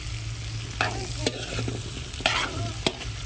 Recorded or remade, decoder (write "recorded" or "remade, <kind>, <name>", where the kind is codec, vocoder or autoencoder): recorded